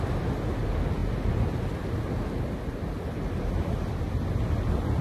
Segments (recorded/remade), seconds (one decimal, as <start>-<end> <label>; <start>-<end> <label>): 0.0-5.0 recorded